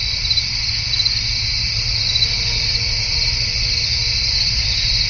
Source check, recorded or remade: recorded